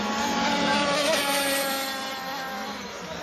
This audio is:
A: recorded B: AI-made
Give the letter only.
A